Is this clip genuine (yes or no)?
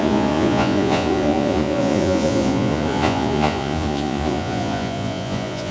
no